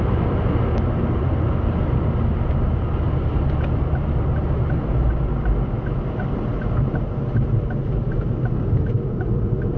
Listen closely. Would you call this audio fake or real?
real